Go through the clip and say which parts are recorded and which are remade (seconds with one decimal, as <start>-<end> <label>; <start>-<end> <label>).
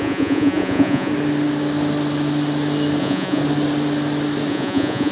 0.0-1.1 remade; 1.1-3.0 recorded; 3.0-3.4 remade; 3.4-4.5 recorded; 4.5-5.1 remade